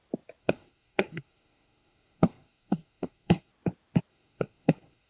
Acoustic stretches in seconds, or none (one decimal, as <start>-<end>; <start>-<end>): 0.0-0.4; 3.5-4.1